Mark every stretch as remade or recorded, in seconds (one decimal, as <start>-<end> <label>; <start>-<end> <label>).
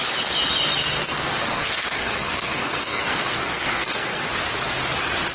0.0-1.0 recorded; 1.0-4.2 remade; 4.2-5.3 recorded